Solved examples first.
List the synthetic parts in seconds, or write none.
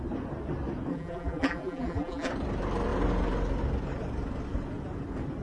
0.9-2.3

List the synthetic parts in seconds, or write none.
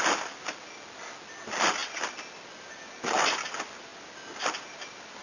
none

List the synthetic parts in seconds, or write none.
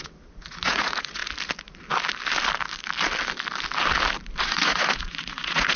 0.0-1.2; 4.4-5.8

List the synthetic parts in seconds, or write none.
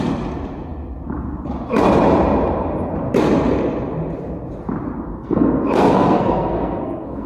5.2-7.3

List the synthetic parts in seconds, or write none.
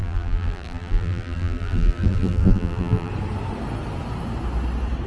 0.0-3.1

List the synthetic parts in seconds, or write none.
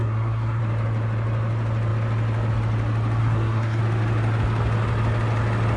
0.0-0.6; 3.2-3.8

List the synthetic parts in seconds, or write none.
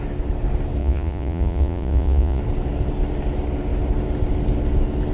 0.8-2.4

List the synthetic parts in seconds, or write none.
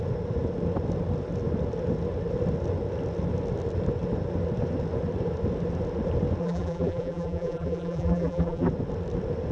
6.4-8.7